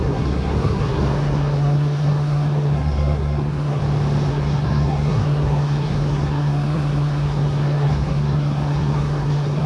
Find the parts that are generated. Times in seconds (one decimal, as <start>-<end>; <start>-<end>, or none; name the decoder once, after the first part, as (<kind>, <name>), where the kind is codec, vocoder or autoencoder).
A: 0.0-3.8 (codec, SNAC); 4.3-9.7